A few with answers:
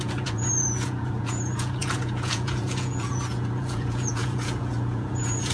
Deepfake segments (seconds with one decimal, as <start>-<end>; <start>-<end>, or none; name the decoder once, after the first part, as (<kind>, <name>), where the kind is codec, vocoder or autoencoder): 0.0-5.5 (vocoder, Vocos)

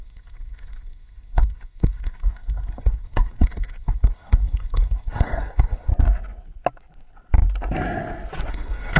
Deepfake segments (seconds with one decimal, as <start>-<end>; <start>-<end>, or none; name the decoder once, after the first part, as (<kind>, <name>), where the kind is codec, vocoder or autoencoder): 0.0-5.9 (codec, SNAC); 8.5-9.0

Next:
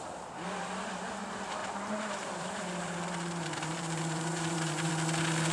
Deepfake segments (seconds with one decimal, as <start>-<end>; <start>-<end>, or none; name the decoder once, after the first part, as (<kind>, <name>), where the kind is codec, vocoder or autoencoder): 1.6-4.9 (vocoder, BigVGAN v2)

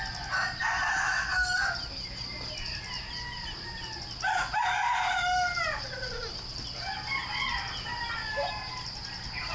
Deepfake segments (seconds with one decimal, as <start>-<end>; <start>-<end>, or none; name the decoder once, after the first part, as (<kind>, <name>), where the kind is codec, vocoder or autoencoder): none

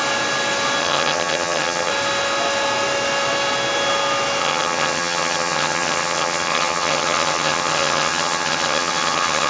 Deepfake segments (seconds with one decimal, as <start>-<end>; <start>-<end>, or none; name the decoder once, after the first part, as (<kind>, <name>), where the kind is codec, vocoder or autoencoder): 0.8-1.9 (vocoder, HiFi-GAN); 4.4-9.5

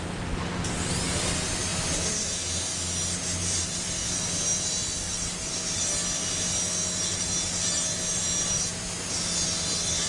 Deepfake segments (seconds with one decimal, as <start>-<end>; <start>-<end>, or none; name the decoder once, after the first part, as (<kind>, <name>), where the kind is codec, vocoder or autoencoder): none